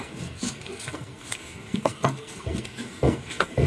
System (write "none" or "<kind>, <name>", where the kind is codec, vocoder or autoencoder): codec, SNAC